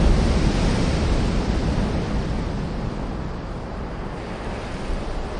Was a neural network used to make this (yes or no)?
yes